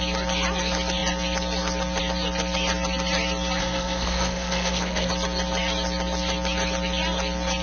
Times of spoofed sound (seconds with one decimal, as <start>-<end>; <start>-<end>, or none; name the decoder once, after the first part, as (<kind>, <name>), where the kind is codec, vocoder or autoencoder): 3.6-5.1 (codec, SNAC)